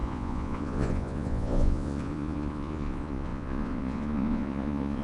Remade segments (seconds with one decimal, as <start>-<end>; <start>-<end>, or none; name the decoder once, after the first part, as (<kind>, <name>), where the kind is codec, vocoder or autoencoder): 0.0-5.0 (vocoder, Vocos)